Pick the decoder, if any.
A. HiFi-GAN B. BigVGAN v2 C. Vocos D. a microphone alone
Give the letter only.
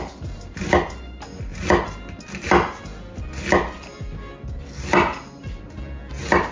D